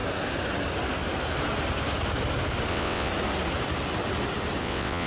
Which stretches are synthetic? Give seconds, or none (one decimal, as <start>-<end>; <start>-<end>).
2.7-3.1; 4.6-5.1